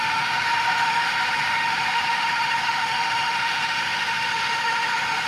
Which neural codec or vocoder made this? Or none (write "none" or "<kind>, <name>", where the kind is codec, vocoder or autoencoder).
autoencoder, DAC-VAE